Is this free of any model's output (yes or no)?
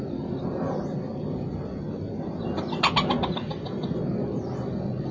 yes